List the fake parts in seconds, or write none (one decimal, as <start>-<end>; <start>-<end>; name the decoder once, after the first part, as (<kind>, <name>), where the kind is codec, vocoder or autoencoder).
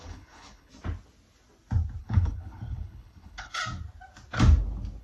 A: 0.0-0.7 (codec, HILCodec); 2.0-3.6